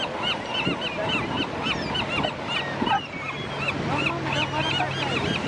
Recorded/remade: recorded